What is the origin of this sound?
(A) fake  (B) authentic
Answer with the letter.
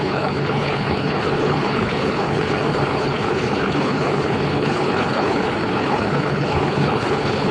A